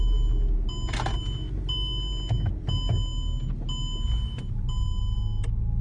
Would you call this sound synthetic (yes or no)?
no